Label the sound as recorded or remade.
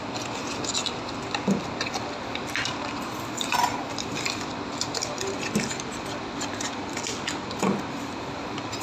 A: recorded